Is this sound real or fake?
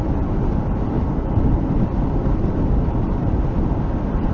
real